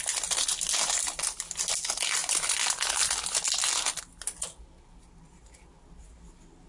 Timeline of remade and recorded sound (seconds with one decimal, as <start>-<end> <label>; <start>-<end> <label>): 0.0-6.7 recorded